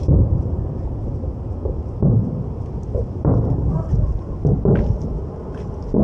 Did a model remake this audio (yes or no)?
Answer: no